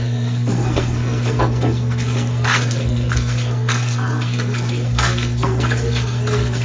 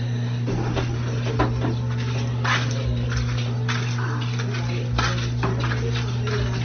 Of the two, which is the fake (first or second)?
first